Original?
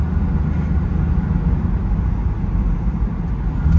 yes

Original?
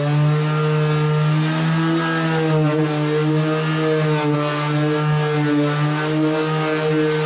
yes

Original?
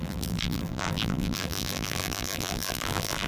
no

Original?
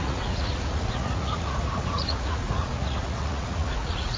no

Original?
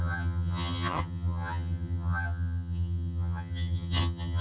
no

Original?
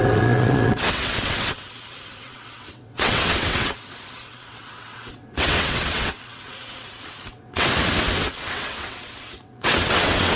no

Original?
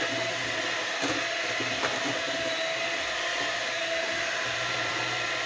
no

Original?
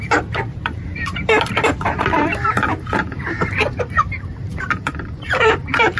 no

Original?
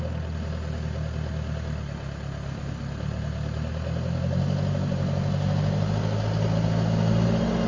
yes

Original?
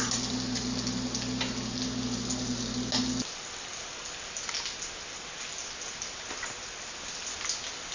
yes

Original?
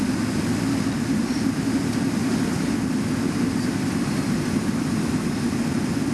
yes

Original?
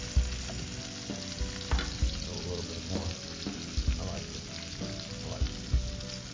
yes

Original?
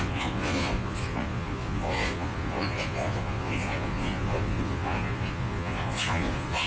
no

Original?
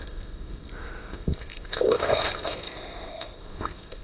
no